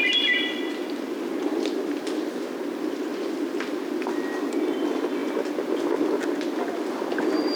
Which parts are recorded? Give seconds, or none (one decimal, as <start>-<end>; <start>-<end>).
0.0-7.6